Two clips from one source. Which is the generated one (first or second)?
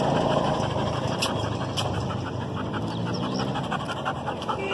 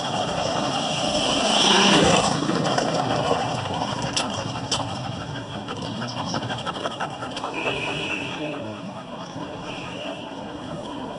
second